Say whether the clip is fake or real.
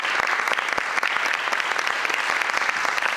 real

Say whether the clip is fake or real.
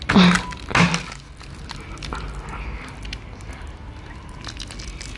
real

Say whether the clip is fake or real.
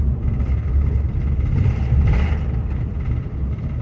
real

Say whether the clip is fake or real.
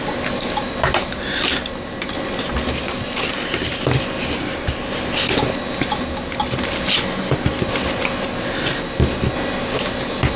real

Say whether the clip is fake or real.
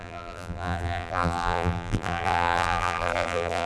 fake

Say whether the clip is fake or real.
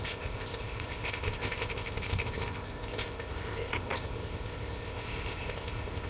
fake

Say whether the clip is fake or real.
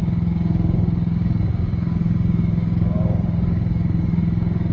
fake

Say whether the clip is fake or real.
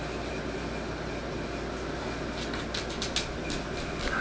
real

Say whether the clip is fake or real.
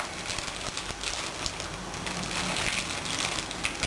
real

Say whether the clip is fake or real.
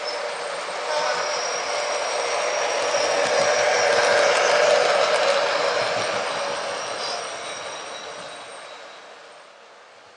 real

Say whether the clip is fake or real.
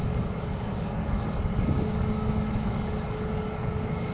fake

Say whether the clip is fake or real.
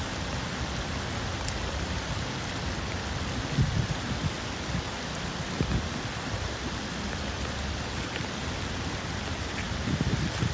real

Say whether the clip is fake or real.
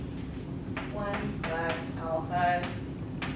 real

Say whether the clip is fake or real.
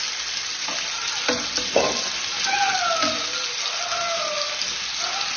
real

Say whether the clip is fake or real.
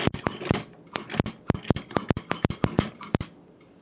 real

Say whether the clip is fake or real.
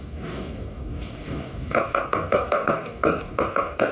fake